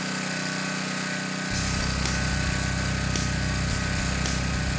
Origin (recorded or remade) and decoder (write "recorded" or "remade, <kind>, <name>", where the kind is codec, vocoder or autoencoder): recorded